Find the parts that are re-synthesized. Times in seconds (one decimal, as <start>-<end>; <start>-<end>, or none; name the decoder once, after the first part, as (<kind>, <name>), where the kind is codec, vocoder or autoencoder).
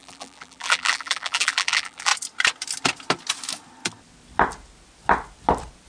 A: 0.0-2.1 (vocoder, BigVGAN v2)